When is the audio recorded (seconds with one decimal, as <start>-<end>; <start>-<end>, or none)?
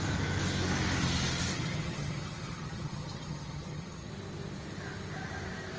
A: 0.0-1.5; 4.1-5.8